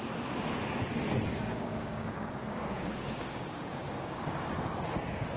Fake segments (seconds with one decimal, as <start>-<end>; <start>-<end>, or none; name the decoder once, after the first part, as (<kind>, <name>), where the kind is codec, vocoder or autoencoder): 1.3-4.5 (codec, DAC)